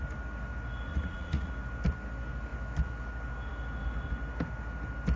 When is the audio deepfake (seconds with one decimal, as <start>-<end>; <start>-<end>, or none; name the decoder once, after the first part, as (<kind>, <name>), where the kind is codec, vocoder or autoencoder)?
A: 0.9-1.5 (vocoder, Vocos)